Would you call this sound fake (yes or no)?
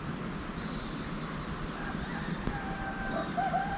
no